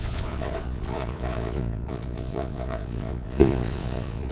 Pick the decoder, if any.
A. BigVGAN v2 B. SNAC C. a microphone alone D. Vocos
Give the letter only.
D